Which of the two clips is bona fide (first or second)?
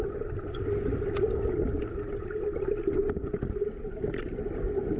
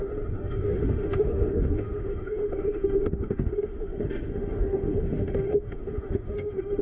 first